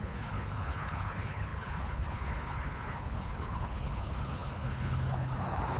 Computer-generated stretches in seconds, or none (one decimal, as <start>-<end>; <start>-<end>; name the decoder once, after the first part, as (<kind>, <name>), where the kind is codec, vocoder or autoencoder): 0.0-5.8 (codec, HILCodec)